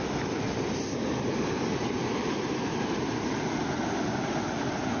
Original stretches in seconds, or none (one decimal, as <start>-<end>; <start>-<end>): 0.0-2.2; 3.4-5.0